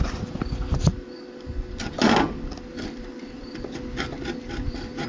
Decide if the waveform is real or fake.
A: real